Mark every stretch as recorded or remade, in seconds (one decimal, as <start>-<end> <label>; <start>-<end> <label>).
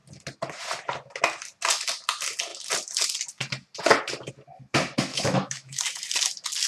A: 0.0-5.1 recorded; 5.1-5.8 remade; 5.8-6.7 recorded